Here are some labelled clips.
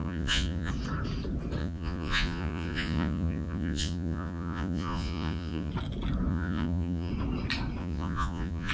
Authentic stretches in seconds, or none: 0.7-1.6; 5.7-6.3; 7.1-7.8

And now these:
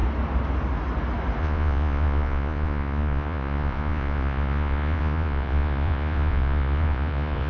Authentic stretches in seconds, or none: 0.0-1.4

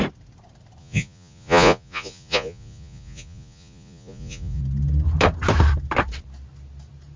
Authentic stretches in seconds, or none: 0.0-0.8; 4.6-7.2

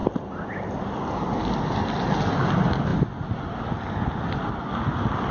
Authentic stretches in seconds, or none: 0.0-5.3

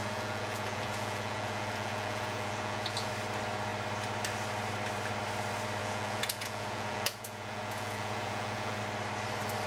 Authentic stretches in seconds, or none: 3.1-5.8; 8.8-9.7

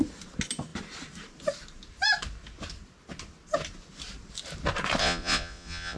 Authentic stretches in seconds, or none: 0.0-5.0